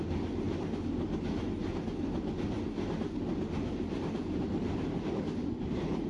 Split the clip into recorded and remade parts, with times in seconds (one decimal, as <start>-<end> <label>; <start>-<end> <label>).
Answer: 0.0-6.1 recorded